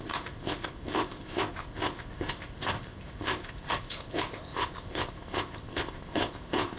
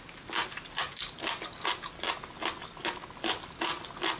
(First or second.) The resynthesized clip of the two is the first